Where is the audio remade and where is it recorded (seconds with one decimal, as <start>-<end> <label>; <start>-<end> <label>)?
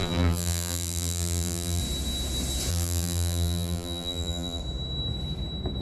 0.0-1.8 remade; 1.8-2.7 recorded; 2.7-4.6 remade; 4.6-5.8 recorded